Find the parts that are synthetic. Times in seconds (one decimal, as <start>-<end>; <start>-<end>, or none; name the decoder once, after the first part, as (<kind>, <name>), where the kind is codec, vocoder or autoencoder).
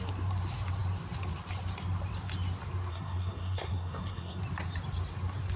2.9-4.4 (codec, SNAC)